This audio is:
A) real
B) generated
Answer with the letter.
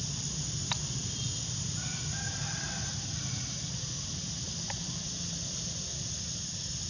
A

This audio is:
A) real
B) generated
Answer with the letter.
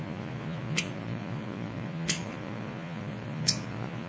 B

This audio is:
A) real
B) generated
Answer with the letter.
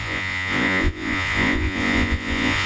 B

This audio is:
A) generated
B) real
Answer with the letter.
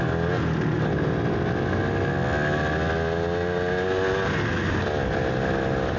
B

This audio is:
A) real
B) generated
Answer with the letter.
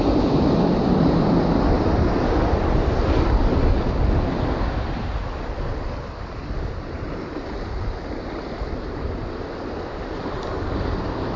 A